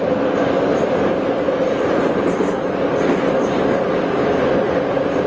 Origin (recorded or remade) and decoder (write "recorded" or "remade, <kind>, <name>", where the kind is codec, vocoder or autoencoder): recorded